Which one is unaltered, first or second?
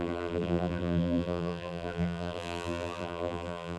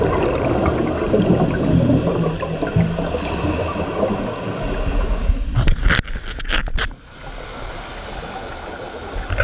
second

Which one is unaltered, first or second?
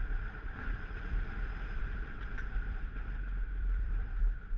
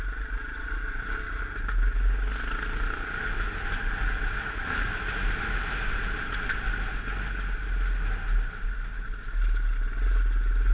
second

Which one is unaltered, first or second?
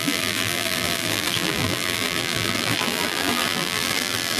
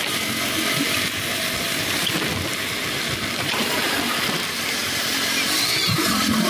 second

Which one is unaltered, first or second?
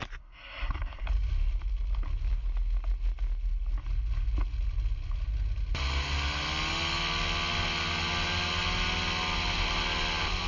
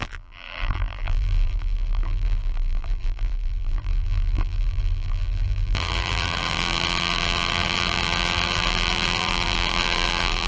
first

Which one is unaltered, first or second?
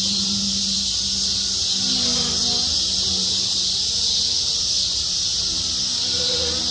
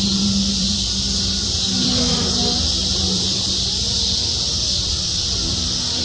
first